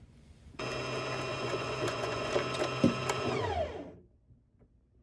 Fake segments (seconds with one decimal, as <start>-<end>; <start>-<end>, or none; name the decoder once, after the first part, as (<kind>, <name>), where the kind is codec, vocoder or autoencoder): 0.0-0.6 (vocoder, Vocos); 1.3-2.3